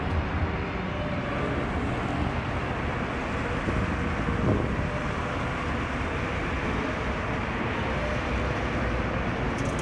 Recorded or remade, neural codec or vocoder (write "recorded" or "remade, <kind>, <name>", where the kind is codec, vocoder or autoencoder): recorded